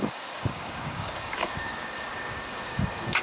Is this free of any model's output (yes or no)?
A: no